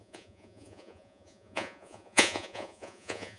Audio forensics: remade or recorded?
remade